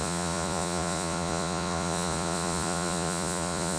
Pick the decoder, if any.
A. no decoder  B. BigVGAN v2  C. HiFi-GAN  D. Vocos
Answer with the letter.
D